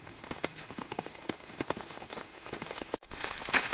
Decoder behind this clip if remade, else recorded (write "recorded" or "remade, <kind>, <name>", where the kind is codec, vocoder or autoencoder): remade, autoencoder, DAC-VAE